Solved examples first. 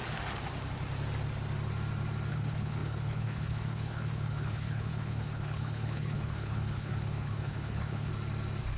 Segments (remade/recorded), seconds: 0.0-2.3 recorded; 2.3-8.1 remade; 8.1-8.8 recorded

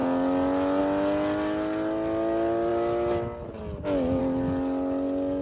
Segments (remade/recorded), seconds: 0.0-5.4 recorded

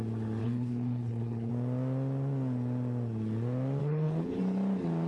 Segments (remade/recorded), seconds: 0.0-0.4 recorded; 0.4-1.5 remade; 1.5-3.8 recorded; 3.8-4.4 remade; 4.4-5.1 recorded

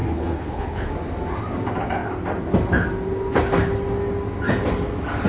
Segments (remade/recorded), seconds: 0.0-0.9 remade; 0.9-5.3 recorded

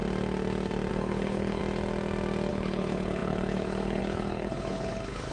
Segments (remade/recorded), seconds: 0.0-0.9 recorded; 0.9-1.6 remade; 1.6-2.5 recorded; 2.5-5.3 remade

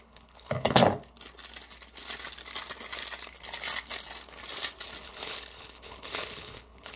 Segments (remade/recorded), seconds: 0.0-0.8 remade; 0.8-5.0 recorded; 5.0-7.0 remade

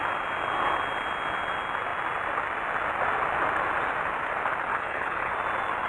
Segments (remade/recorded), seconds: 0.0-4.7 recorded; 4.7-5.3 remade; 5.3-5.9 recorded